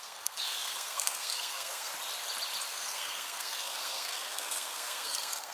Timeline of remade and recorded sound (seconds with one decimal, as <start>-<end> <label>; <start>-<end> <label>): 0.0-1.9 remade; 1.9-2.7 recorded; 2.7-5.5 remade